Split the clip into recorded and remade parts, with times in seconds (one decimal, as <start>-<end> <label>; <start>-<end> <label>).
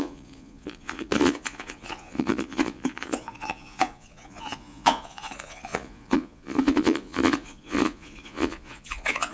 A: 0.0-9.3 remade